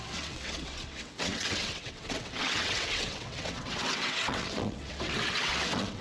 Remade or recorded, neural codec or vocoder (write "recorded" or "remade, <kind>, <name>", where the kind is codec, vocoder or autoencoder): remade, vocoder, WaveNeXt